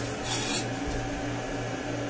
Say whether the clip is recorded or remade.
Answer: recorded